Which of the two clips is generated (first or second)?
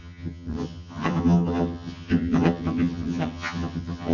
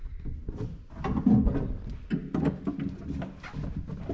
first